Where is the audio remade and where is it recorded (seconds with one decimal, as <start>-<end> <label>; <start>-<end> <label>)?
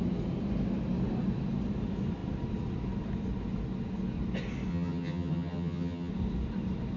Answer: 0.0-4.7 recorded; 4.7-6.1 remade; 6.1-7.0 recorded